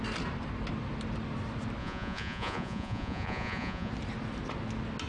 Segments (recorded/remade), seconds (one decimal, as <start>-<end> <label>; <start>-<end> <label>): 0.0-1.8 recorded; 1.8-3.9 remade; 3.9-5.1 recorded